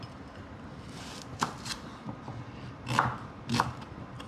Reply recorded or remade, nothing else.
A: recorded